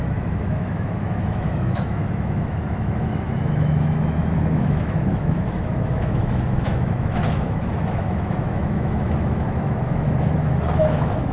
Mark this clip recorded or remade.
remade